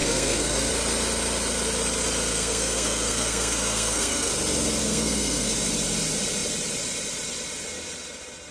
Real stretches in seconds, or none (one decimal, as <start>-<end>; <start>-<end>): 0.7-2.3; 4.3-4.8; 5.5-8.5